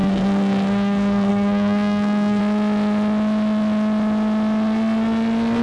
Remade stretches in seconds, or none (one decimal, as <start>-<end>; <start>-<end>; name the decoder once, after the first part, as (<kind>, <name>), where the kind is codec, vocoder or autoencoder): 0.0-2.4 (codec, SNAC)